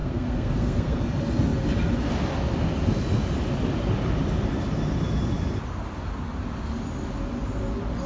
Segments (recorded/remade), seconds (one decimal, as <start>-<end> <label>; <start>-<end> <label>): 0.0-1.0 remade; 1.0-8.1 recorded